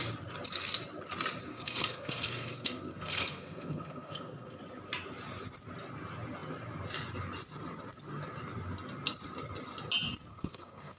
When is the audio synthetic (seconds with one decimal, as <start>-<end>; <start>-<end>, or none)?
1.5-4.6; 10.3-11.0